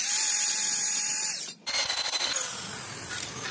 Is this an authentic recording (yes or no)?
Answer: no